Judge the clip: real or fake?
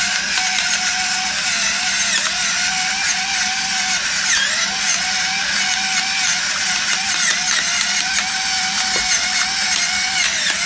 real